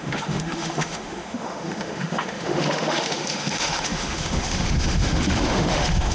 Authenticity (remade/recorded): remade